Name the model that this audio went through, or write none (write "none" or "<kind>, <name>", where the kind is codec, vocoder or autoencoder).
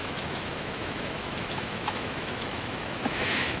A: autoencoder, DAC-VAE